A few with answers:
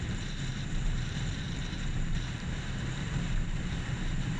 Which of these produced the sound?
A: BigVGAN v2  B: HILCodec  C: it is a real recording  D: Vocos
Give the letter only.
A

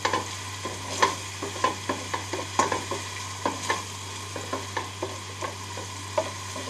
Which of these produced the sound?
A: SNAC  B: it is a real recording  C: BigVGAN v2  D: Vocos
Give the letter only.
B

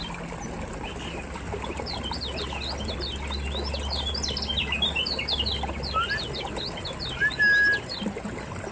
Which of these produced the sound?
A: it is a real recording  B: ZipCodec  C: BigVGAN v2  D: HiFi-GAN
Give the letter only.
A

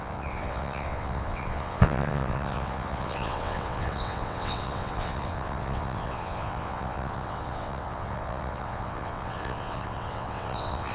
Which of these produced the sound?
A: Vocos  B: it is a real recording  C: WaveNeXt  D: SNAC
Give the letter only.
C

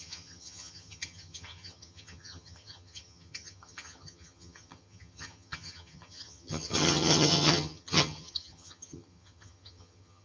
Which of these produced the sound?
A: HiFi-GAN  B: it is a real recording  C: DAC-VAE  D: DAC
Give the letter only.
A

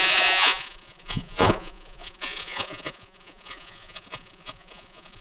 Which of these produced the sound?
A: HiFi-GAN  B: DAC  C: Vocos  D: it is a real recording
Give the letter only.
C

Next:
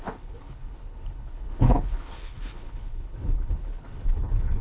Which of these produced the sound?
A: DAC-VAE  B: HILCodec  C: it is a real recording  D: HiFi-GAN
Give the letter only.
B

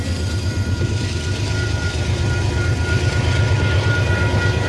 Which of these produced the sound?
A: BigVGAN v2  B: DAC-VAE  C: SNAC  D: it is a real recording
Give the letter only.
A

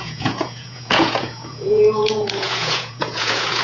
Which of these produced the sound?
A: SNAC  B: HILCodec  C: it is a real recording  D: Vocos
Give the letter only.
D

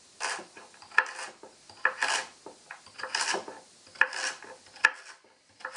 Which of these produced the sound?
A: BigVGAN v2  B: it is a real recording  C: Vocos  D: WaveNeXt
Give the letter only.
B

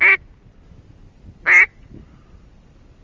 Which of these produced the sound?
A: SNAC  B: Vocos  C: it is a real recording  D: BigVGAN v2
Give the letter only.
C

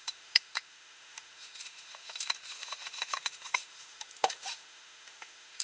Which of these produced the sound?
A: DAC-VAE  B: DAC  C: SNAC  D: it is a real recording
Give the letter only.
A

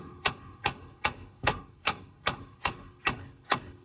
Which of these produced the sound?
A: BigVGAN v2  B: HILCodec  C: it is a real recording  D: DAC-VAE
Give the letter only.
B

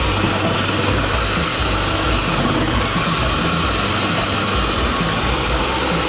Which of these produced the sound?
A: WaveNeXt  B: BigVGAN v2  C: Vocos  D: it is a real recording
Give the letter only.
D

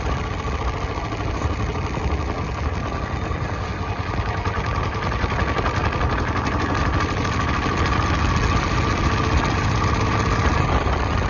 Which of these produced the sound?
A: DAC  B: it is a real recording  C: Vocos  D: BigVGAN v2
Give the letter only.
B